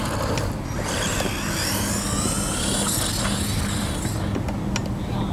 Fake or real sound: real